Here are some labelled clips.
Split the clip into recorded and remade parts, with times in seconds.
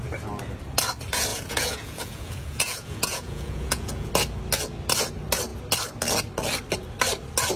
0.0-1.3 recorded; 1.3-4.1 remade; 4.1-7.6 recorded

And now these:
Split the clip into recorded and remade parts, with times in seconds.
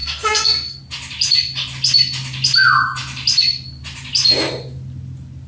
0.0-0.8 remade; 0.8-5.5 recorded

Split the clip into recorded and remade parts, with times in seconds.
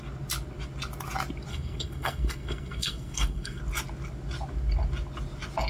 0.0-1.5 recorded; 1.5-3.6 remade; 3.6-5.7 recorded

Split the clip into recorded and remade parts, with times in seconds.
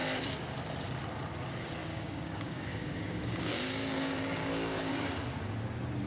0.0-1.8 recorded; 1.8-5.1 remade; 5.1-6.1 recorded